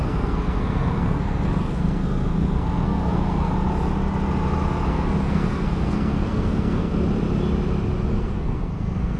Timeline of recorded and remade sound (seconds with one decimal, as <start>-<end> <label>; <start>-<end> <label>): 0.0-3.5 remade; 3.5-4.9 recorded; 4.9-6.9 remade; 6.9-8.1 recorded; 8.1-9.2 remade